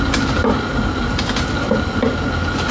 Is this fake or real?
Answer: real